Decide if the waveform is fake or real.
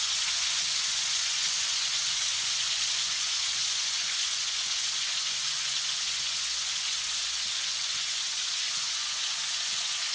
fake